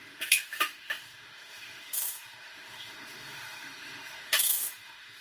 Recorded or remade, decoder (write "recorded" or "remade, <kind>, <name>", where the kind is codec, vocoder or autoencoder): remade, autoencoder, DAC-VAE